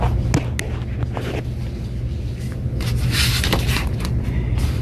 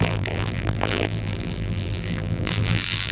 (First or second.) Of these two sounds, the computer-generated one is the second